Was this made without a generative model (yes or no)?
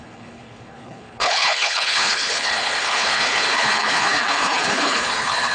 no